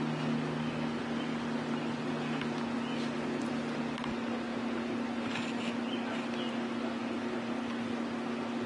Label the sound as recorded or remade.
recorded